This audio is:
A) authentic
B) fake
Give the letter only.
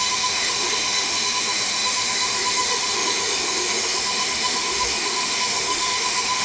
B